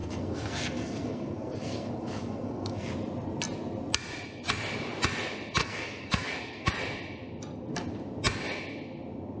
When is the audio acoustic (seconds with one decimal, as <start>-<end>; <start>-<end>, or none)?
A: 2.9-5.6; 6.7-9.4